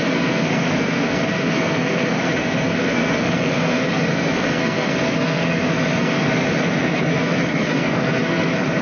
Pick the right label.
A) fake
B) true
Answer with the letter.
A